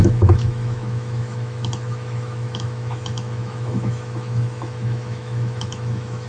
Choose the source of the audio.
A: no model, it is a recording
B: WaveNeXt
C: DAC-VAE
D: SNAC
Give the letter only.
C